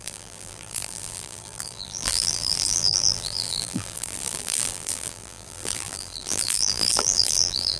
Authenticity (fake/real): fake